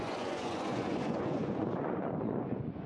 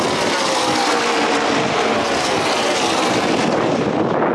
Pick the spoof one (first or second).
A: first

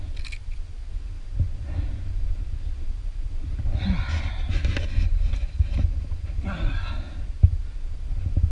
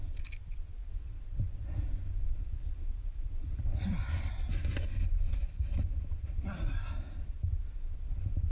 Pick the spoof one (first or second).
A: second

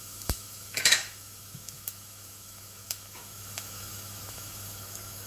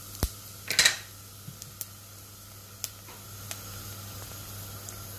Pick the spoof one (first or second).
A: first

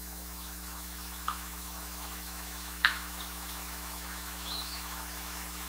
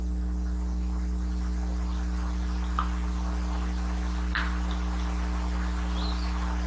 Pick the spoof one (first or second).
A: first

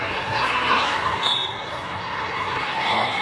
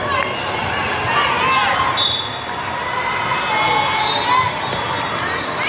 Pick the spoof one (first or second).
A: first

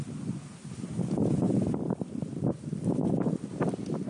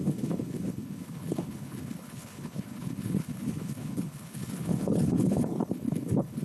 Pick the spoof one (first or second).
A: second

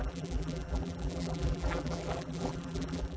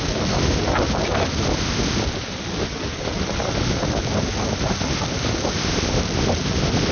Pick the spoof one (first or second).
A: first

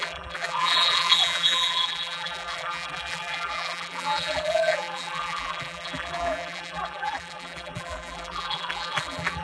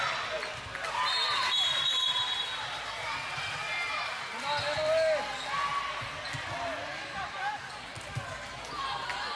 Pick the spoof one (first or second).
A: first